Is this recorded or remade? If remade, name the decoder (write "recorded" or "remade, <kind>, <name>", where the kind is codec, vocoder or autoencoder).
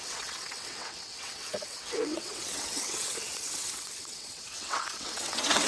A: remade, vocoder, WaveNeXt